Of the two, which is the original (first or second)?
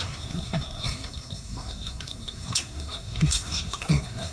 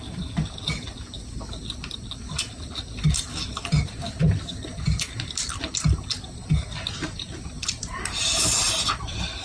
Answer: second